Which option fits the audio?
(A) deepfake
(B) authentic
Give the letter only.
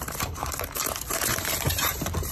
A